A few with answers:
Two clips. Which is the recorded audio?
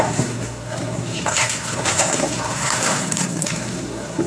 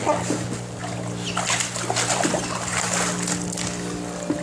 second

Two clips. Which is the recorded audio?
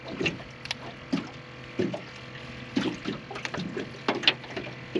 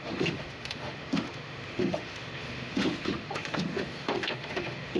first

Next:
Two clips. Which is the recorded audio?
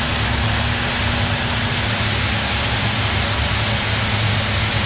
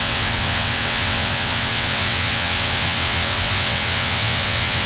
first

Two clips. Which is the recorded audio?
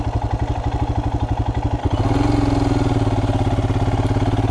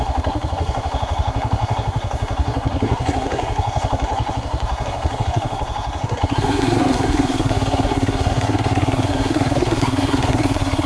first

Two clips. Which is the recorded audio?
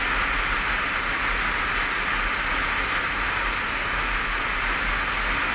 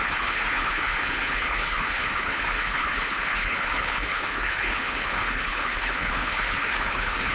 first